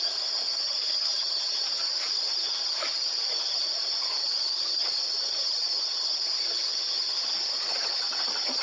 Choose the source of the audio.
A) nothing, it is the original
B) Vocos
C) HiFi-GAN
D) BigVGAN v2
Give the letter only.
C